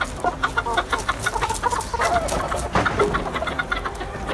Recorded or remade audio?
recorded